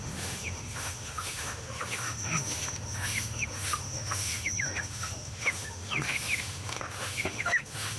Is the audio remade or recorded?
remade